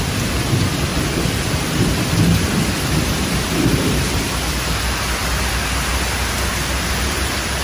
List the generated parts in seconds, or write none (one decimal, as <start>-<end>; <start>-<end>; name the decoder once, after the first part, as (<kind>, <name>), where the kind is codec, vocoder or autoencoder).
0.9-5.5 (vocoder, BigVGAN v2)

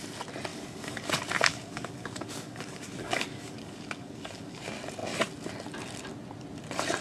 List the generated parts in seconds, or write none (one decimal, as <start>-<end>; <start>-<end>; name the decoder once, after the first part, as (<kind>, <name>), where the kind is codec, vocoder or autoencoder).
0.5-1.1 (codec, DAC); 1.5-4.6

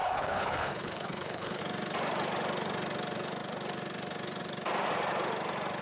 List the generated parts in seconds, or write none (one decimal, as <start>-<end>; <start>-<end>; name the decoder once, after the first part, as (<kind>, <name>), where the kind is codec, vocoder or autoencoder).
0.0-1.6 (codec, HILCodec)

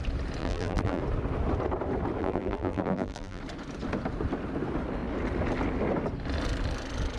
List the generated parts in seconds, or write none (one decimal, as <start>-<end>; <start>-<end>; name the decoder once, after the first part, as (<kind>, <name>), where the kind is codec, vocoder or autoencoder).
0.4-1.0 (vocoder, BigVGAN v2); 2.2-3.4

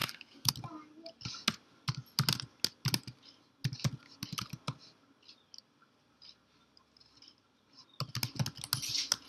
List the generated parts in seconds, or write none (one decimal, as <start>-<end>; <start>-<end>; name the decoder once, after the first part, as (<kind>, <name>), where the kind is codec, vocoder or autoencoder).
0.0-0.5 (codec, SNAC)

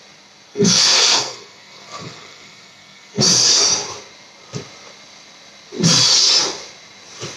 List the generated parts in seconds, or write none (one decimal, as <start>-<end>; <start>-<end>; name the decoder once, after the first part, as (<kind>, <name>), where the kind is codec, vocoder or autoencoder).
0.5-3.2 (codec, SNAC)

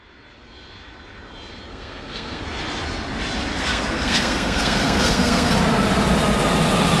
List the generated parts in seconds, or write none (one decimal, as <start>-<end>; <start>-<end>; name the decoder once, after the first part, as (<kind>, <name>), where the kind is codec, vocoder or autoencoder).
1.7-2.4 (codec, SNAC); 3.5-5.5